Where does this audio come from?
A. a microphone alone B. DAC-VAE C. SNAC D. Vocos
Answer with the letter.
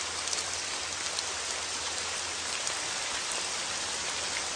A